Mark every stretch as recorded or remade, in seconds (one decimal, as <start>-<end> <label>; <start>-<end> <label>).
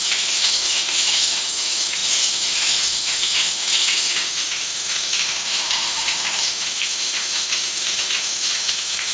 0.0-9.1 remade